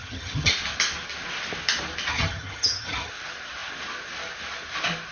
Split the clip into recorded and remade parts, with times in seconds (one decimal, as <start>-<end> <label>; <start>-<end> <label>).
0.0-0.5 remade; 0.5-2.1 recorded; 2.1-3.1 remade; 3.1-5.1 recorded